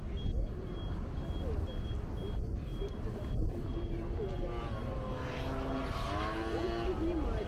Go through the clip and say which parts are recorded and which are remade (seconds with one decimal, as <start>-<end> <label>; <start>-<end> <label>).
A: 0.0-2.7 recorded; 2.7-3.3 remade; 3.3-7.5 recorded